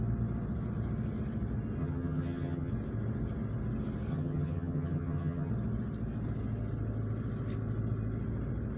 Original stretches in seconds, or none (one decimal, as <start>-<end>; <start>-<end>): 0.0-1.8; 2.7-4.1; 5.5-8.8